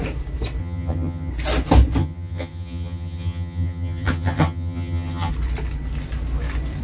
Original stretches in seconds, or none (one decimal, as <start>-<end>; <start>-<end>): 0.0-0.6; 1.3-2.0; 5.3-6.8